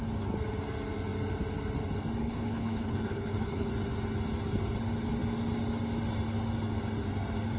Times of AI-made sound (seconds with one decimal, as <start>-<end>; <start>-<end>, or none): 2.2-3.7